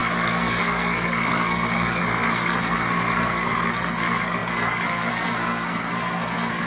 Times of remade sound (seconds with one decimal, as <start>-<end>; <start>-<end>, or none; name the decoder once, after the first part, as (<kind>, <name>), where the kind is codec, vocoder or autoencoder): 0.0-6.7 (codec, SNAC)